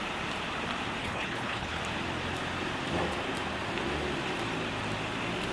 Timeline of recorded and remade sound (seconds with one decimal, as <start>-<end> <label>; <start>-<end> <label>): 0.0-1.0 recorded; 1.0-1.8 remade; 1.8-5.5 recorded